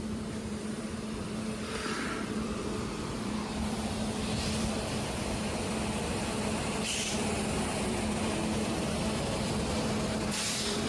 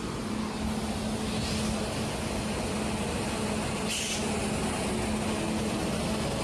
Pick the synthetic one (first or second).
first